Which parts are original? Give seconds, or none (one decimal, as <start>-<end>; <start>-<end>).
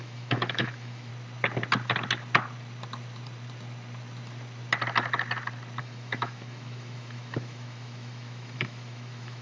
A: 1.1-5.8